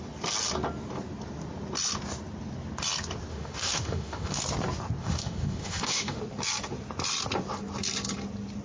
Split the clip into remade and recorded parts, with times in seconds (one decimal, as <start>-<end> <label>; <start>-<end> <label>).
0.0-3.3 recorded; 3.3-4.4 remade; 4.4-5.0 recorded; 5.0-6.2 remade; 6.2-8.6 recorded